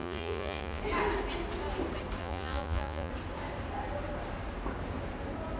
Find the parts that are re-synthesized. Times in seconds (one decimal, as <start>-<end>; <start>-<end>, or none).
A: 0.0-0.8; 2.2-3.1